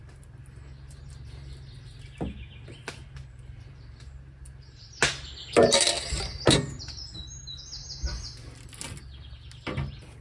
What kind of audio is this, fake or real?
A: real